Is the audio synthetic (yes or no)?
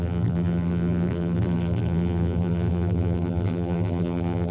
yes